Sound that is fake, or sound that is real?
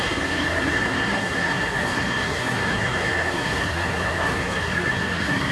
fake